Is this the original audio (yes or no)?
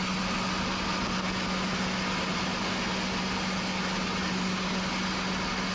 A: yes